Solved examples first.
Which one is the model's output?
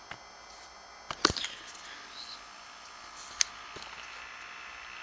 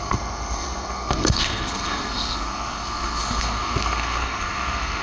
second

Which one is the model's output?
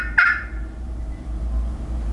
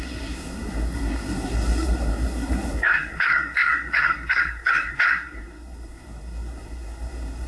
second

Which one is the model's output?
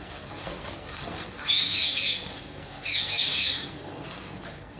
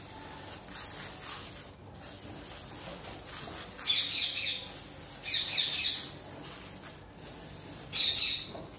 first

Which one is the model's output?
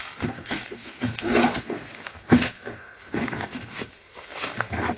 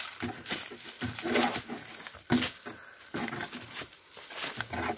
first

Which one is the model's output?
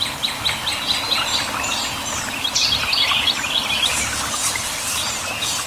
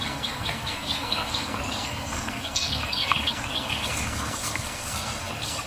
second